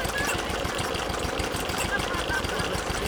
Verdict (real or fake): real